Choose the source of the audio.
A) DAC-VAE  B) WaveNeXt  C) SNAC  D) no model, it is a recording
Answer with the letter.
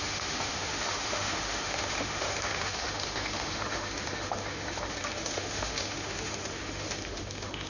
A